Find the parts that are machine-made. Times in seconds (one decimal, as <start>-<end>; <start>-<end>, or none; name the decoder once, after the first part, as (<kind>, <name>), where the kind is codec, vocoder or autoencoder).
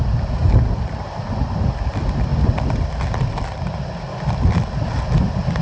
none